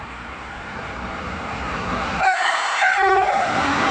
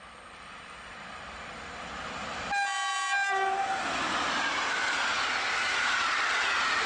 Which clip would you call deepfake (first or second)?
first